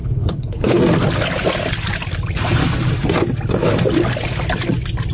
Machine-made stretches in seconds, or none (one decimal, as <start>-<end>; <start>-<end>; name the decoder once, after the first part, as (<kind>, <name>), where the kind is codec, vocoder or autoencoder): 0.0-0.8 (codec, HILCodec)